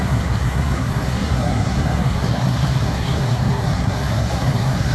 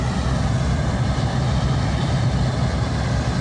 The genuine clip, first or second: second